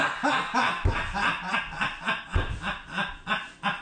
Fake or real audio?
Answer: real